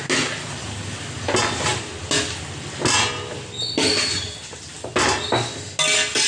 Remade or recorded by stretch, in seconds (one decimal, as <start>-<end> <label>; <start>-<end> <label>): 0.0-6.3 recorded